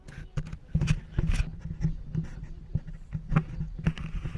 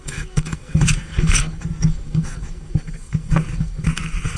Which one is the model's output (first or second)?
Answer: second